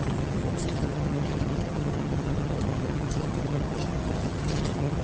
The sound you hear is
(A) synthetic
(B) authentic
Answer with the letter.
A